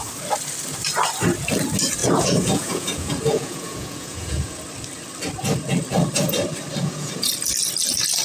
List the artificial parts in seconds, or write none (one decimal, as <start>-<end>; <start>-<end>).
2.0-4.6; 6.8-7.3